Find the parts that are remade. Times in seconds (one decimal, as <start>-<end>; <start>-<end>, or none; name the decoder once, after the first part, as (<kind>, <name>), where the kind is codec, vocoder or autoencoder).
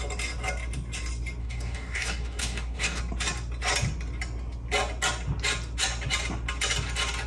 1.4-3.0 (codec, DAC)